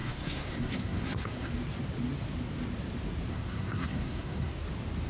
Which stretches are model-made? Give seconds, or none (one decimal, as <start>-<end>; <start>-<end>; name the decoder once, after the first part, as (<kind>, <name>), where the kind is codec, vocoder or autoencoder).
0.0-1.5 (codec, SNAC); 3.3-4.5

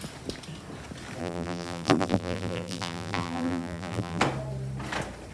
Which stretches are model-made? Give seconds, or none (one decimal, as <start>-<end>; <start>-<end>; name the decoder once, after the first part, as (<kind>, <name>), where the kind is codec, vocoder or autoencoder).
1.2-4.2 (vocoder, BigVGAN v2)

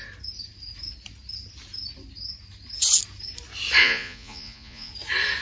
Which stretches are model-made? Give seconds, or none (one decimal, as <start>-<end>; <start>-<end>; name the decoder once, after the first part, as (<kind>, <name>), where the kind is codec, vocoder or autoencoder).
3.8-4.9 (vocoder, Vocos)

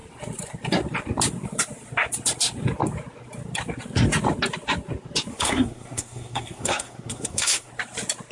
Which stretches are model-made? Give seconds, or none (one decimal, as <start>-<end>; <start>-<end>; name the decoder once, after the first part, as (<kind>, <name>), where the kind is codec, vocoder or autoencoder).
5.3-7.7 (codec, SNAC)

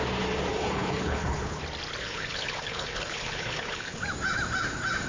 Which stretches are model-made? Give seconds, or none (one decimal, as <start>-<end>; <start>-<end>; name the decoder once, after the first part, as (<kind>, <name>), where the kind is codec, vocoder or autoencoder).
0.5-1.6 (codec, HILCodec); 2.0-4.0

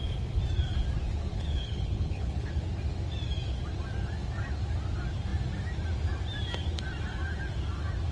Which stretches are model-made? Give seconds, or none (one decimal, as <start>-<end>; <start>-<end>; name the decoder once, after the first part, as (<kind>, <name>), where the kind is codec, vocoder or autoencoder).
1.3-2.6 (codec, HILCodec)

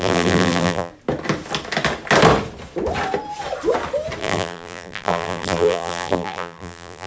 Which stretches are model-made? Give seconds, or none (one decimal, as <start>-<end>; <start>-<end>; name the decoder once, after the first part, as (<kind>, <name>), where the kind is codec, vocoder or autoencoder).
0.0-0.9 (vocoder, BigVGAN v2); 4.2-7.1

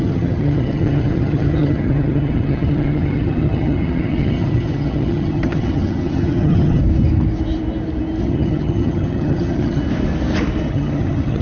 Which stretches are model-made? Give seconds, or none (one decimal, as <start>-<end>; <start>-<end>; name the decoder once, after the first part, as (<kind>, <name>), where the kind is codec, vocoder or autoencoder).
0.0-6.8 (vocoder, HiFi-GAN); 8.2-9.8; 10.7-11.4